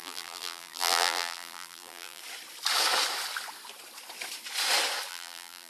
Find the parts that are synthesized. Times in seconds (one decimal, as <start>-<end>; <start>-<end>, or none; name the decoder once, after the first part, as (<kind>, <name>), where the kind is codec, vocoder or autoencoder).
0.0-2.2 (vocoder, BigVGAN v2); 5.1-5.7